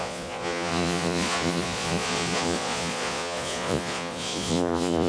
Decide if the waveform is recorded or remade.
remade